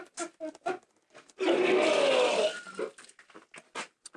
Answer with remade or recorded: recorded